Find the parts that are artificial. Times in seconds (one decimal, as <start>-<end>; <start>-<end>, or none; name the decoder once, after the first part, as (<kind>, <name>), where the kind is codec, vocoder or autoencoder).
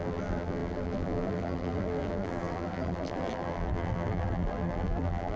0.0-5.4 (vocoder, BigVGAN v2)